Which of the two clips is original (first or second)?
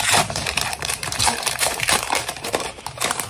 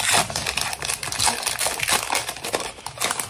second